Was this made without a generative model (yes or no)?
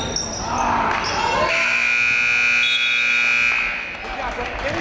yes